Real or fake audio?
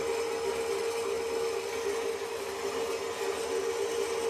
real